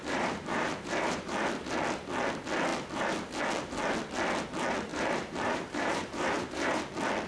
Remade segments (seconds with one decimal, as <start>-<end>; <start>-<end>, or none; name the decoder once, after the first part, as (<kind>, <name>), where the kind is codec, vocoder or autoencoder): 0.0-1.3 (vocoder, BigVGAN v2); 4.9-6.8